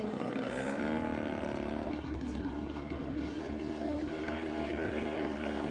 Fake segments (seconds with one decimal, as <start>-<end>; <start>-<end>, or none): 0.0-0.8; 1.9-5.7